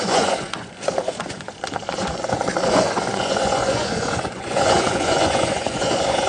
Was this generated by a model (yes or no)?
yes